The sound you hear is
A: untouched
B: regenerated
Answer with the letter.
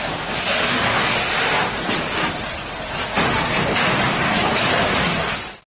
A